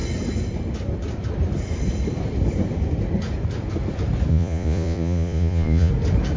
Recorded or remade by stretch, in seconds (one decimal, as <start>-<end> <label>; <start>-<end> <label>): 0.0-4.3 recorded; 4.3-5.9 remade; 5.9-6.4 recorded